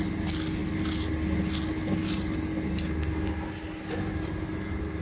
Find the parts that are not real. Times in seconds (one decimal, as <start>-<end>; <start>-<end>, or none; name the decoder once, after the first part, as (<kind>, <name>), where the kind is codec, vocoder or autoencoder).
none